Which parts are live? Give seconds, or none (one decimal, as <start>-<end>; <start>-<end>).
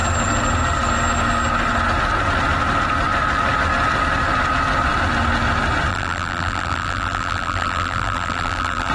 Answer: 0.0-5.9